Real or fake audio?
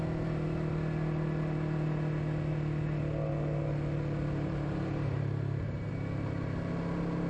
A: real